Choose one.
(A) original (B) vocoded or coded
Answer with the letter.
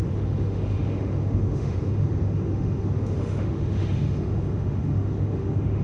B